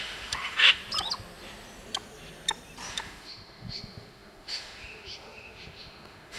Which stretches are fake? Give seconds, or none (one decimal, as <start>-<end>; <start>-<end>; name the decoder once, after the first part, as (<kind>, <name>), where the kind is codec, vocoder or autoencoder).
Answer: 0.0-0.8 (autoencoder, DAC-VAE); 2.9-6.4